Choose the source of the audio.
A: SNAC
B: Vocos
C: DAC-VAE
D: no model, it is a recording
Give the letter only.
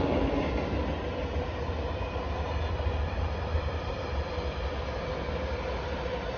D